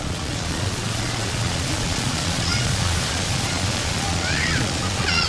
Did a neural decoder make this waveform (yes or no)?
yes